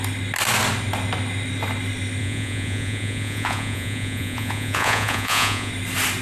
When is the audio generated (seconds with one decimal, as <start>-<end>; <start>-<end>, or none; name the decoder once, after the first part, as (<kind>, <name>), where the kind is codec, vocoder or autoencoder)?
2.2-5.7 (vocoder, Vocos)